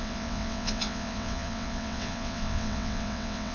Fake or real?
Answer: fake